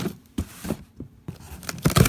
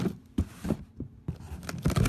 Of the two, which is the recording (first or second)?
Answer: second